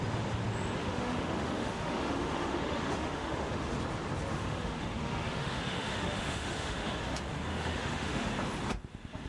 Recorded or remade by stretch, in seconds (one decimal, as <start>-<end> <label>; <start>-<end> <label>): 0.0-0.8 recorded; 0.8-3.7 remade; 3.7-4.3 recorded; 4.3-6.9 remade; 6.9-7.5 recorded; 7.5-8.3 remade; 8.3-9.3 recorded